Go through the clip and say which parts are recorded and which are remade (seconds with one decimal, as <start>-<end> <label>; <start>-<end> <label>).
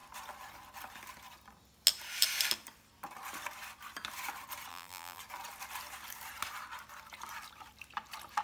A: 0.0-4.7 recorded; 4.7-5.2 remade; 5.2-8.4 recorded